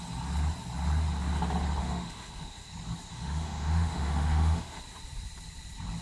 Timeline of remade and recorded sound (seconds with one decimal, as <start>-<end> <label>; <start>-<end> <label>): 0.0-1.8 recorded; 1.8-2.7 remade; 2.7-3.1 recorded; 3.1-4.8 remade; 4.8-6.0 recorded